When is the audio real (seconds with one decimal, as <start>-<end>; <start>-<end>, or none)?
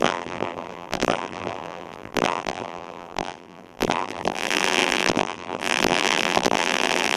none